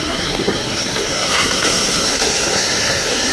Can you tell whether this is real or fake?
fake